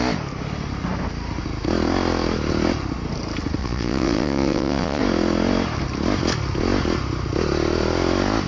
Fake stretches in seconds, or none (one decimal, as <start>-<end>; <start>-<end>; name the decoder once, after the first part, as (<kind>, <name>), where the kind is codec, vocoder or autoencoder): 3.6-5.0 (vocoder, WaveNeXt)